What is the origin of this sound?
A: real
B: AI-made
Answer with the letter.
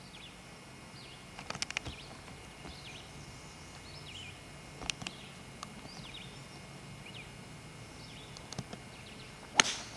A